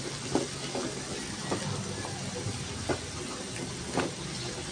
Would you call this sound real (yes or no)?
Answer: yes